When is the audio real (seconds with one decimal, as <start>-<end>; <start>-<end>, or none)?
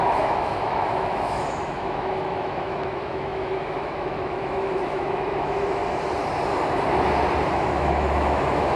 5.8-7.5